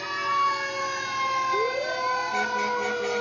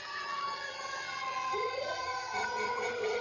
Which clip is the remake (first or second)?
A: second